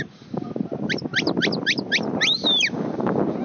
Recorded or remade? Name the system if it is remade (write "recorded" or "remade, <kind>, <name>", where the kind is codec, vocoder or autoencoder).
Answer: recorded